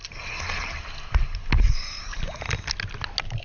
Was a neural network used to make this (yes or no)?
no